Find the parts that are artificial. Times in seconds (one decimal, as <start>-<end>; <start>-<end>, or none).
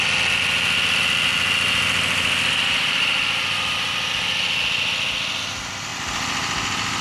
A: none